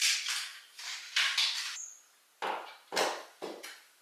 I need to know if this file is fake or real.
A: real